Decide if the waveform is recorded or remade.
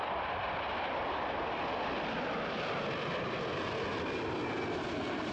recorded